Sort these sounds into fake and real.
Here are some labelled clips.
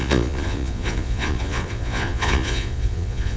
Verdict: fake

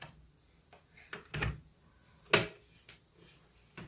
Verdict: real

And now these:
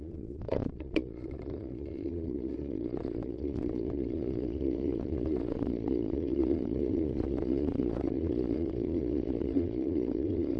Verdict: fake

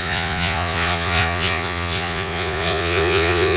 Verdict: fake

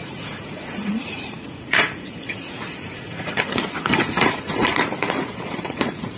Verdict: fake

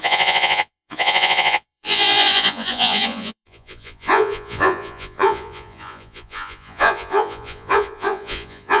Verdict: fake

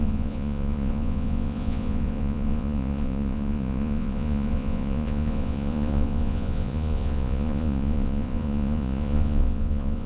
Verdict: fake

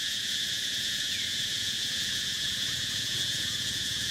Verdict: fake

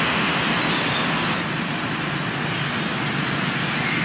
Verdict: real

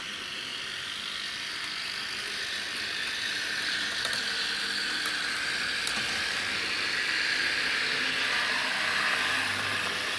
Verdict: real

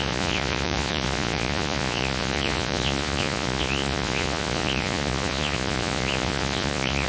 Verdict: fake